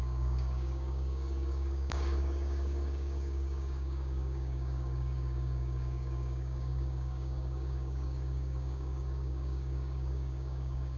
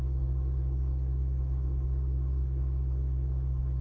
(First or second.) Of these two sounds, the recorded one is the second